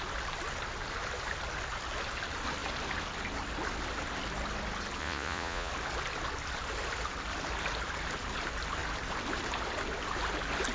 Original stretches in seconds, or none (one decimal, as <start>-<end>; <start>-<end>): 0.0-5.0; 5.7-10.7